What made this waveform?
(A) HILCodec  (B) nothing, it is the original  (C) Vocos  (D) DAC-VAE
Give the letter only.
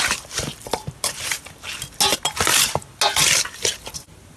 B